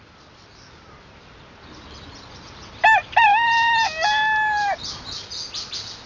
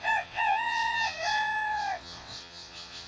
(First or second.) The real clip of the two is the first